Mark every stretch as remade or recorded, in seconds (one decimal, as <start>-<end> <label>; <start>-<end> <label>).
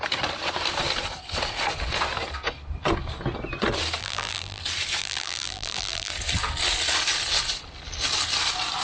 0.0-4.0 recorded; 4.0-4.6 remade; 4.6-5.0 recorded; 5.0-6.1 remade; 6.1-8.8 recorded